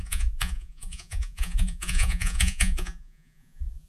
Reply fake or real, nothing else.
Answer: fake